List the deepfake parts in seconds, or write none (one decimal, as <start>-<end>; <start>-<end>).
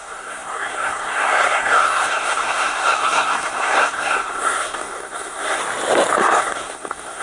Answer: 0.0-5.6; 6.2-7.2